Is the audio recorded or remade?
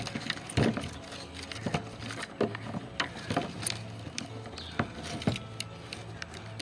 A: recorded